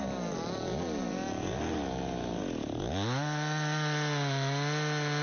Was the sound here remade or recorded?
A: recorded